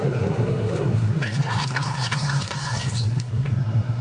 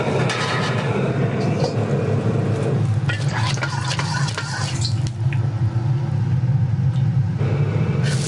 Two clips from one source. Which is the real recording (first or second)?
second